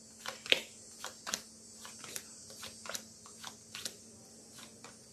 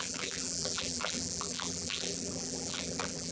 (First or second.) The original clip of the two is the first